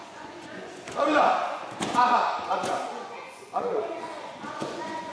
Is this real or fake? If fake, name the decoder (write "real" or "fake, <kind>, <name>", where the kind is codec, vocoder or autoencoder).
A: fake, vocoder, Vocos